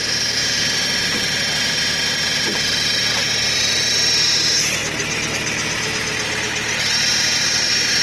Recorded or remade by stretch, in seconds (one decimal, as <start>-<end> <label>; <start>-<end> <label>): 0.0-0.4 recorded; 0.4-3.8 remade; 3.8-8.0 recorded